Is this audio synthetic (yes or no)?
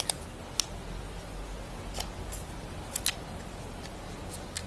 no